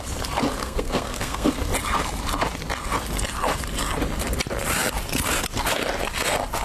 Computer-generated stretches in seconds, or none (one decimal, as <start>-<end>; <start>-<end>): 0.6-1.5